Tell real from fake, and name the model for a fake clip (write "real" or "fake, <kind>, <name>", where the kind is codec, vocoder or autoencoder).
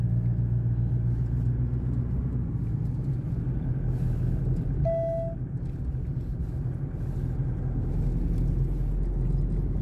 real